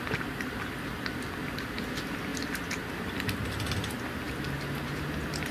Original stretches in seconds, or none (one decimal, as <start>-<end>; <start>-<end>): 0.0-5.5